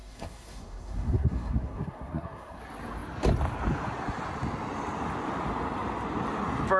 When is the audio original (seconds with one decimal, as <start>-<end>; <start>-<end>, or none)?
2.6-6.8